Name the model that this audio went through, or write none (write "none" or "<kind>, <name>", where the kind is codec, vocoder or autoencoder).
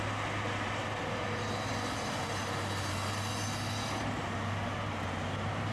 none